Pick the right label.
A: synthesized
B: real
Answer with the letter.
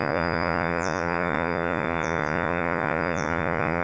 A